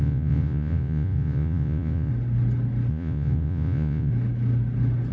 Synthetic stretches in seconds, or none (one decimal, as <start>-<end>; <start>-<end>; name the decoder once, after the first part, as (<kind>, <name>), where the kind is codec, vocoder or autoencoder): 0.0-2.1 (vocoder, Vocos); 2.9-4.1